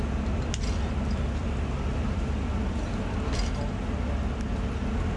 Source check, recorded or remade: recorded